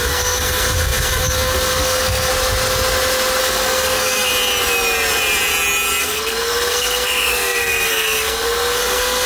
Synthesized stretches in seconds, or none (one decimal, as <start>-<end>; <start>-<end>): 0.0-2.3; 3.4-4.3; 6.0-9.3